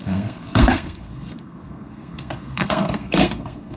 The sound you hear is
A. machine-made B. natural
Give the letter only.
A